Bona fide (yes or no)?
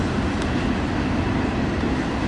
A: yes